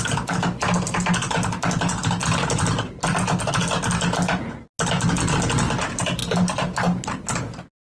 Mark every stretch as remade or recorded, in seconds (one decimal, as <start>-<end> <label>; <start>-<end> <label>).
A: 0.0-7.8 recorded